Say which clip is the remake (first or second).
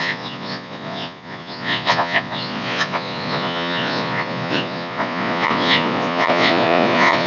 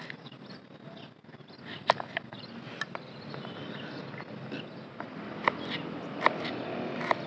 first